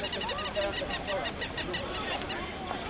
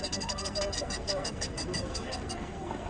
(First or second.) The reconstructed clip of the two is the second